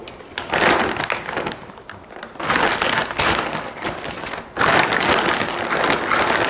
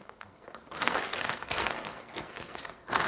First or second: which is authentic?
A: first